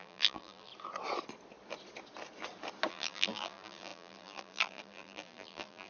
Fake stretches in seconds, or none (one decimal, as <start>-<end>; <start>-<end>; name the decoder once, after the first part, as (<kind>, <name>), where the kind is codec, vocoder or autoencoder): 0.0-0.7 (vocoder, BigVGAN v2); 2.9-5.9